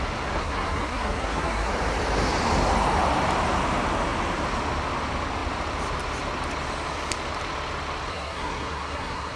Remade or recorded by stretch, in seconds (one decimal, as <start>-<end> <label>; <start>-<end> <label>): 0.0-0.4 recorded; 0.4-1.7 remade; 1.7-8.1 recorded; 8.1-9.4 remade